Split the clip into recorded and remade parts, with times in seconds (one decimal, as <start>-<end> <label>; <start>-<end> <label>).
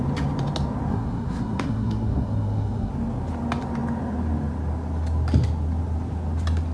0.0-0.9 recorded; 0.9-2.9 remade; 2.9-6.7 recorded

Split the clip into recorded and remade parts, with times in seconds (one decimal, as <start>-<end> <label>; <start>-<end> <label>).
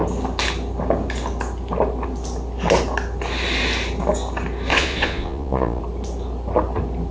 0.0-4.7 recorded; 4.7-5.8 remade; 5.8-7.1 recorded